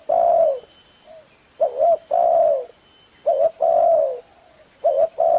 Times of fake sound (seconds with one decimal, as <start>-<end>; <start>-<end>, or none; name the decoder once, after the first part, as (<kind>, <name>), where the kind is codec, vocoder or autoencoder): none